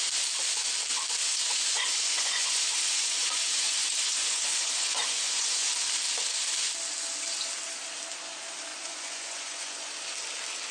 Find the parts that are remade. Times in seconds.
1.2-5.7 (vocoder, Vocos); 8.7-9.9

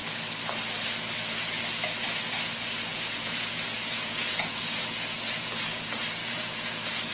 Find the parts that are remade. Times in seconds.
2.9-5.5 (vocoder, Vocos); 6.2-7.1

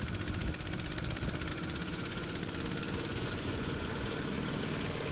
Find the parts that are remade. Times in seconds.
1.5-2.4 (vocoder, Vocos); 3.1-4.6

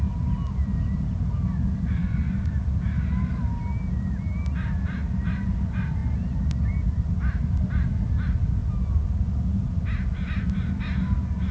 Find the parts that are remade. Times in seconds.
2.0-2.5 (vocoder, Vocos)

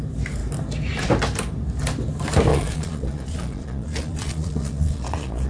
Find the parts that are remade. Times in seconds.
2.5-5.5 (vocoder, Vocos)

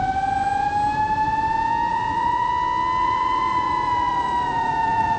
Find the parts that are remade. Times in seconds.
1.9-2.5 (vocoder, Vocos); 3.0-5.2